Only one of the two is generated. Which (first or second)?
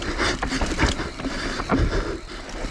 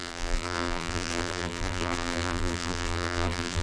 second